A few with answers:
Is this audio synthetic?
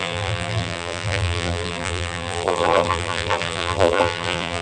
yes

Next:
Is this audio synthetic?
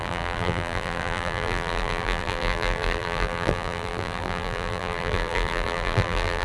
yes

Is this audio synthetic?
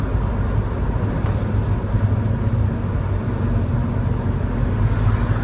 no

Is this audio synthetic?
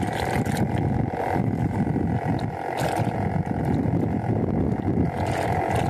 no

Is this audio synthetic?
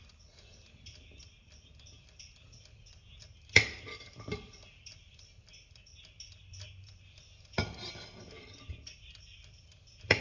yes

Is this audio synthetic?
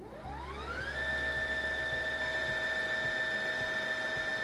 no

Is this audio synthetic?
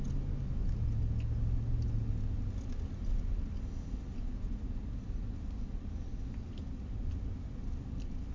no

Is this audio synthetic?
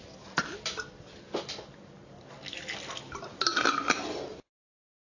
no